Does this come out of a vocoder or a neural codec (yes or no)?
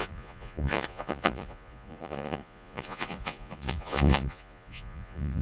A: yes